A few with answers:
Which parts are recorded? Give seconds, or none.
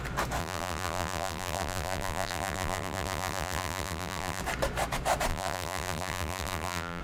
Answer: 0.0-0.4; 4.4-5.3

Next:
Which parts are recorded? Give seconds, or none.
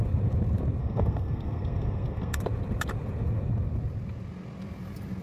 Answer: 0.0-0.8; 2.4-5.2